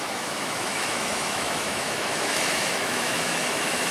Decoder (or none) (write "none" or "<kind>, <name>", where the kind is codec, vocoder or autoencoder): autoencoder, DAC-VAE